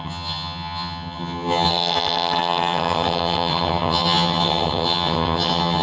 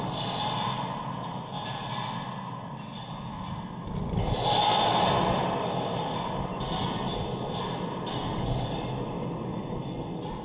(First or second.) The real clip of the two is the second